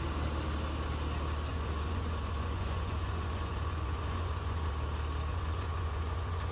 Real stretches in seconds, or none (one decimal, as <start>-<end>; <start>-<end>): 0.0-1.5; 4.7-5.3